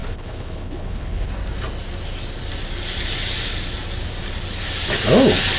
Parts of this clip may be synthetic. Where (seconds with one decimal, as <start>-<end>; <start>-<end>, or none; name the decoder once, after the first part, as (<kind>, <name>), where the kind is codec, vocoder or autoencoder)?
0.0-1.3 (codec, HILCodec)